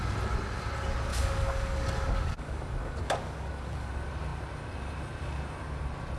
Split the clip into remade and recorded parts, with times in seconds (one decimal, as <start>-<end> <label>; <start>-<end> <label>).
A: 0.0-1.1 recorded; 1.1-3.9 remade; 3.9-6.2 recorded